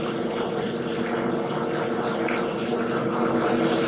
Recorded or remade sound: recorded